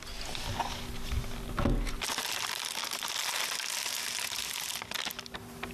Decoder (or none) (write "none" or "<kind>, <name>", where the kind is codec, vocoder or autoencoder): none